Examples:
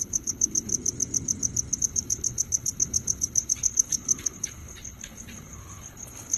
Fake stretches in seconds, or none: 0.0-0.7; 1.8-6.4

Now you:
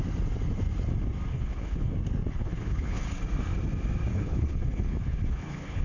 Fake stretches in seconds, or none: 1.3-1.9; 2.4-3.0; 4.1-5.8

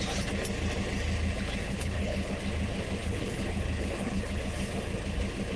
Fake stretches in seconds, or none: 1.6-2.3; 3.0-4.4

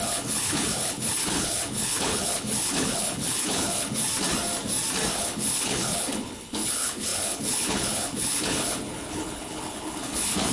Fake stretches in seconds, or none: 0.0-4.1; 5.1-10.5

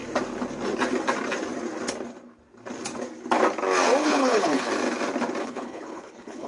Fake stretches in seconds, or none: 4.0-4.7; 5.4-6.5

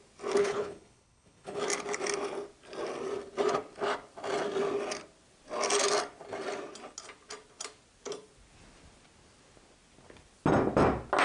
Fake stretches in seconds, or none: 0.4-1.6

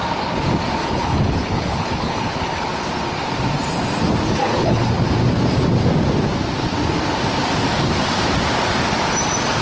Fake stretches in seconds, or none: 0.8-2.7; 4.4-4.9

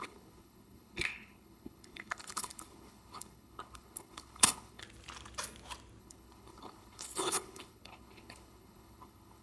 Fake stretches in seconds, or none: 0.0-4.8; 6.0-9.4